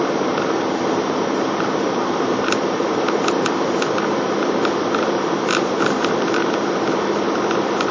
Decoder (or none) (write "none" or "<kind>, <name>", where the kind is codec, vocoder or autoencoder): vocoder, BigVGAN v2